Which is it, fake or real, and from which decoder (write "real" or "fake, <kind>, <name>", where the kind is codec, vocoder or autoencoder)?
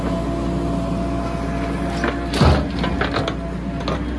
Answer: real